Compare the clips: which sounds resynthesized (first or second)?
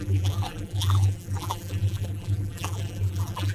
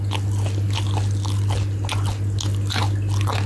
first